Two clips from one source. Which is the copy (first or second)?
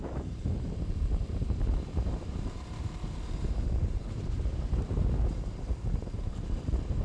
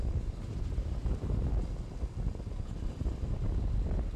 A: first